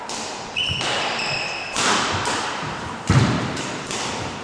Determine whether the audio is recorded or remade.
remade